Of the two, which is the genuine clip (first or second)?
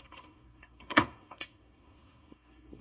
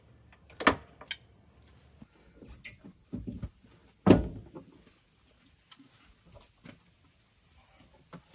second